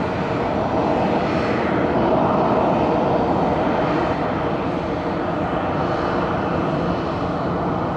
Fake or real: real